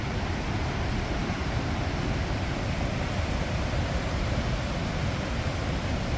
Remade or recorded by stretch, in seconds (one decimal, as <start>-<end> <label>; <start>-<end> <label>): 0.0-6.2 recorded